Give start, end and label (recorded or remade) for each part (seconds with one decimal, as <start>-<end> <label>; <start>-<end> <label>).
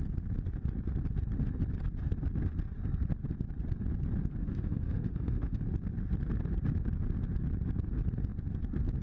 0.0-4.4 recorded; 4.4-5.6 remade; 5.6-9.0 recorded